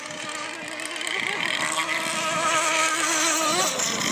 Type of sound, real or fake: real